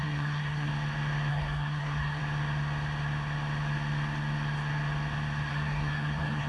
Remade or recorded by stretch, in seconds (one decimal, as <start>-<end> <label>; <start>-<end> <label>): 0.0-0.7 remade; 0.7-1.3 recorded; 1.3-2.2 remade; 2.2-5.5 recorded; 5.5-6.5 remade

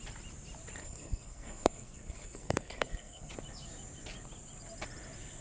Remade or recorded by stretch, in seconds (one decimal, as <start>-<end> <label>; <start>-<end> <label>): 0.0-0.8 recorded; 0.8-3.3 remade; 3.3-5.4 recorded

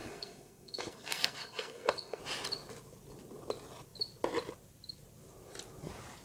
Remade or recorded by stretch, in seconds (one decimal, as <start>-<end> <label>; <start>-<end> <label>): 0.0-2.2 remade; 2.2-6.2 recorded

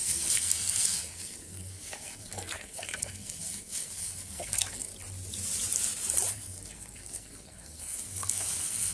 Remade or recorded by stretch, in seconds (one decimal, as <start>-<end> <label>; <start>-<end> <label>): 0.0-4.9 remade; 4.9-6.3 recorded; 6.3-8.9 remade

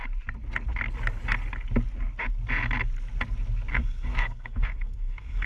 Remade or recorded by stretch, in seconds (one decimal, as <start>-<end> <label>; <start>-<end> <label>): 0.0-3.7 recorded; 3.7-5.5 remade

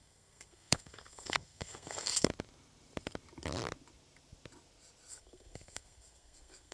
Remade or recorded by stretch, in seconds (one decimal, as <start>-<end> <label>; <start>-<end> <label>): 0.0-2.3 remade; 2.3-5.1 recorded; 5.1-6.7 remade

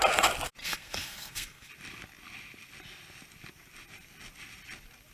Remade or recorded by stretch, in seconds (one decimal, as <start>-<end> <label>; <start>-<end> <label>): 0.0-0.6 recorded; 0.6-1.7 remade; 1.7-5.1 recorded